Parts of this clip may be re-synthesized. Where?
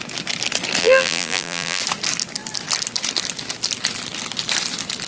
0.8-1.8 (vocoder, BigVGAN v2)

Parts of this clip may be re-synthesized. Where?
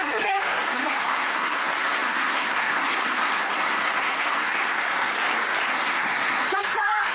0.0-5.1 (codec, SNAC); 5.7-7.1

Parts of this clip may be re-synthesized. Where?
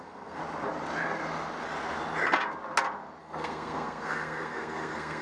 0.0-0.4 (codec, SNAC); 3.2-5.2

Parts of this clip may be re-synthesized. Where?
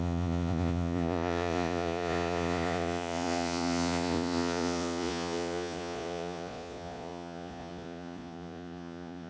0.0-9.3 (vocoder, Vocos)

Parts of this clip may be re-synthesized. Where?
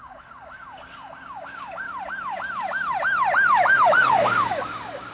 0.0-1.9 (codec, DAC); 4.1-5.1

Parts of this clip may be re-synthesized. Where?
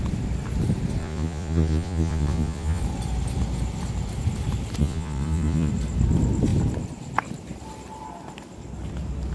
1.0-2.8 (vocoder, Vocos); 4.8-5.7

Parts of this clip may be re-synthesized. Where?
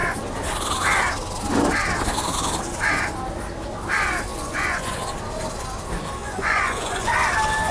4.3-5.0 (vocoder, Vocos); 6.2-7.1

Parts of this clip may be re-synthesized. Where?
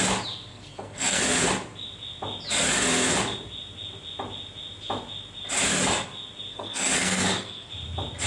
0.5-1.2 (codec, SNAC); 6.5-7.7